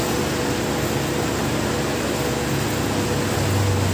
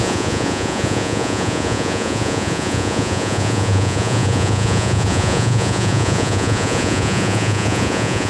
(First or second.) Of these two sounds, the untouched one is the first